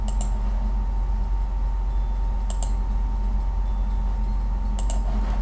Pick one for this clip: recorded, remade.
recorded